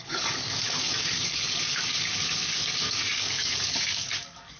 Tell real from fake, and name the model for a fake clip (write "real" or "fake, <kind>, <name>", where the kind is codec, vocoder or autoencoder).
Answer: fake, codec, DAC